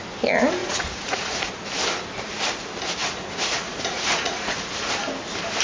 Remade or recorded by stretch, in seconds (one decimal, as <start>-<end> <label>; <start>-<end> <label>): 0.0-0.6 recorded; 0.6-1.5 remade; 1.5-3.0 recorded; 3.0-4.9 remade; 4.9-5.6 recorded